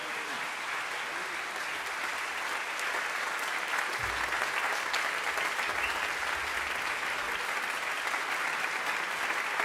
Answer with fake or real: real